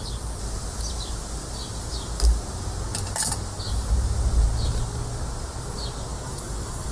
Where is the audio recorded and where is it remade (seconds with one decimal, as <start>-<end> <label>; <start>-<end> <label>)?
0.0-6.1 recorded; 6.1-6.9 remade